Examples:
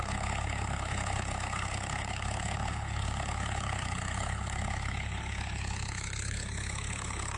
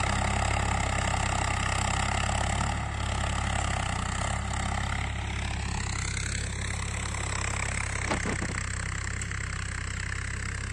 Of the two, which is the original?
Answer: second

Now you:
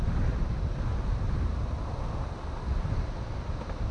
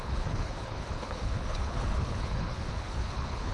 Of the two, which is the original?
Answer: first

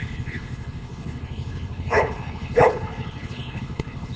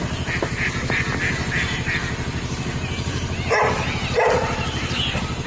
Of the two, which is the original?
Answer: second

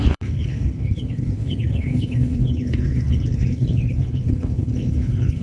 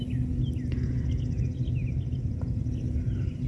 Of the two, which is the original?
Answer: second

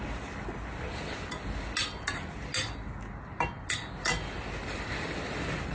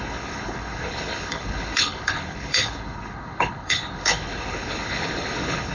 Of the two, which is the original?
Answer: first